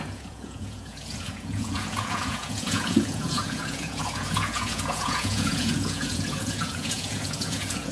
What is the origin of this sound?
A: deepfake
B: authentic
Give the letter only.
A